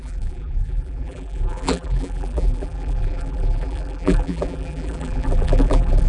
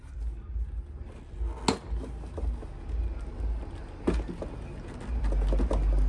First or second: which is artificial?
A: first